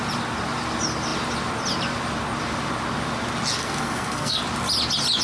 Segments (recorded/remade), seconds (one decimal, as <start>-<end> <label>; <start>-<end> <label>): 0.0-3.6 recorded; 3.6-4.4 remade; 4.4-5.2 recorded